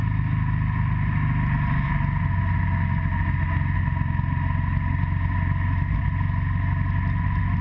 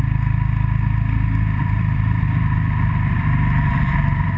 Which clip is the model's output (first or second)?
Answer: second